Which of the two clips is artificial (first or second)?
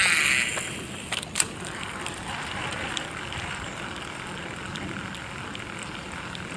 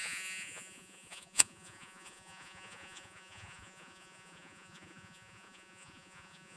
second